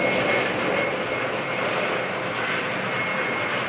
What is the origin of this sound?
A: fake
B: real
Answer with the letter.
B